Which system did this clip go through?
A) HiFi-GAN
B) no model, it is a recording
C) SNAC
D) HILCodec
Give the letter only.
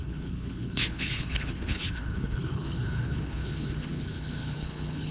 D